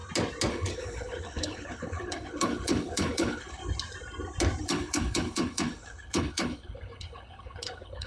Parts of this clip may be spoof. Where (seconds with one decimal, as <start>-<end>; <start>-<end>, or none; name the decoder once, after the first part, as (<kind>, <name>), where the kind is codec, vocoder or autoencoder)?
0.5-3.6 (codec, HILCodec); 4.6-8.1